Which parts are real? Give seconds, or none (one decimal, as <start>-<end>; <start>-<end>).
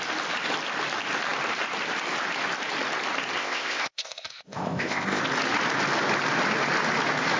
0.0-3.4; 5.2-7.4